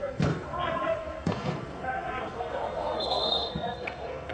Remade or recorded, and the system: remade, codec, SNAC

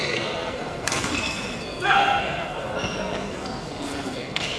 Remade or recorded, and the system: remade, codec, SNAC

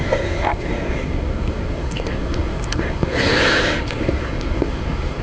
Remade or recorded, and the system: remade, codec, SNAC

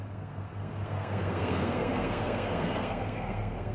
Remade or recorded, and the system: remade, codec, SNAC